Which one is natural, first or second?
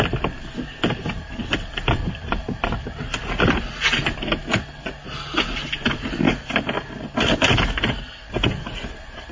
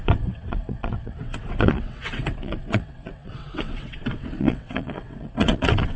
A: first